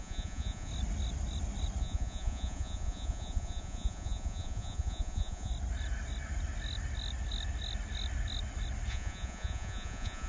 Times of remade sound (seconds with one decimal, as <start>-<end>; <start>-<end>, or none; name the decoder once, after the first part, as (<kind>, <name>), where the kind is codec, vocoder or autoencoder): 0.0-0.7 (vocoder, Vocos); 1.8-5.5; 8.9-10.3